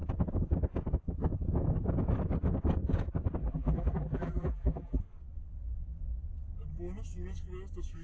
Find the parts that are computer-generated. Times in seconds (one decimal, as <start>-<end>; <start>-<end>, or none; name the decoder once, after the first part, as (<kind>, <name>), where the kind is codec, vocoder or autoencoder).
3.4-5.0 (vocoder, BigVGAN v2)

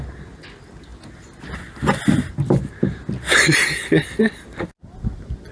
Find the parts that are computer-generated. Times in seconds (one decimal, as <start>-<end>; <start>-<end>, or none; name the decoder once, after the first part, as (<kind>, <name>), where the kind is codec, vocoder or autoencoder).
none

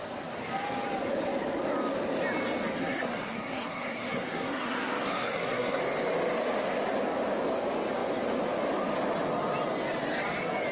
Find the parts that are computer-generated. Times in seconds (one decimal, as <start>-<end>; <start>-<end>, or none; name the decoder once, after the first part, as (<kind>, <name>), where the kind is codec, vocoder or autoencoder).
2.8-5.8 (codec, SNAC)

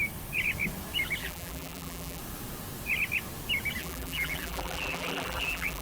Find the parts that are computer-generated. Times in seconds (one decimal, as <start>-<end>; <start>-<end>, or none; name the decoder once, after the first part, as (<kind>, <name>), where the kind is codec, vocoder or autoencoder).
1.2-2.2 (vocoder, BigVGAN v2); 3.8-5.8

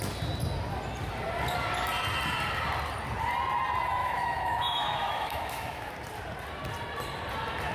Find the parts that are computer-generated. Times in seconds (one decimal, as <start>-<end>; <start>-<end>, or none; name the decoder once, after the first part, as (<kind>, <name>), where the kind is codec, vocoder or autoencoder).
4.0-5.9 (autoencoder, DAC-VAE)